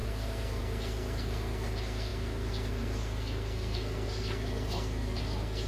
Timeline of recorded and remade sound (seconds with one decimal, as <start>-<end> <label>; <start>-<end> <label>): 0.0-5.7 remade